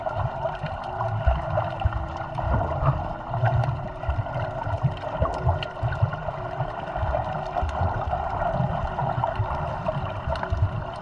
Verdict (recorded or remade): remade